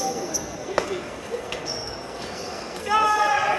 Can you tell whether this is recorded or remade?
remade